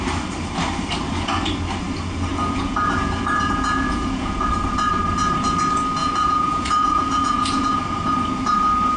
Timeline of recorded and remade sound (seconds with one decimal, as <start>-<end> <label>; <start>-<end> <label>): 0.0-2.3 recorded; 2.3-4.5 remade; 4.5-6.0 recorded; 6.0-7.8 remade; 7.8-9.0 recorded